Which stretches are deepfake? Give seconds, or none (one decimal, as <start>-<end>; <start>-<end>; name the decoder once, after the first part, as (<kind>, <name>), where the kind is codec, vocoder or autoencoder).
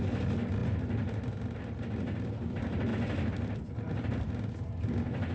none